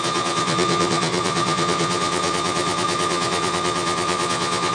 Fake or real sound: fake